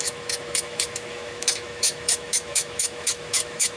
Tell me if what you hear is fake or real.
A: fake